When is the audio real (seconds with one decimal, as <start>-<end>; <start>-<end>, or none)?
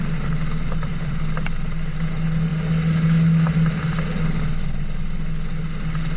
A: 0.0-6.2